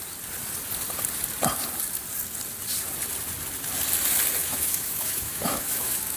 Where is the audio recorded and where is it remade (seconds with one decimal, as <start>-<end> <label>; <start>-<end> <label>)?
0.0-4.4 recorded; 4.4-6.2 remade